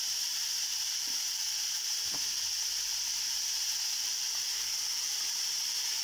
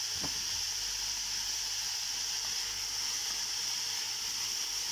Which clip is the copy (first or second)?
first